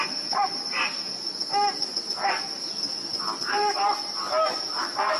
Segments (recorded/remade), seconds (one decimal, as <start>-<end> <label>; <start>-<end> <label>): 0.0-5.2 recorded